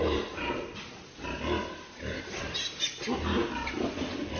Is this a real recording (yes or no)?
yes